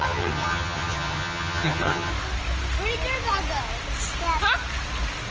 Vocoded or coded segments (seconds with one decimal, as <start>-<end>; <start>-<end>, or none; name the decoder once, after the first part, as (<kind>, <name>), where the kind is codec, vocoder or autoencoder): 0.0-2.1 (vocoder, HiFi-GAN)